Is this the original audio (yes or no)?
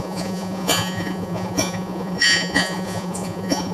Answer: no